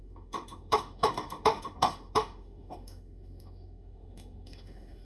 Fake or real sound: fake